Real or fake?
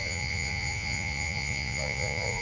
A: fake